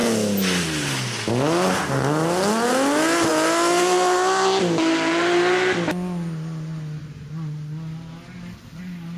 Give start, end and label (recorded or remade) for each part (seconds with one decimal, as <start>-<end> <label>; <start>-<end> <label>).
0.0-9.2 recorded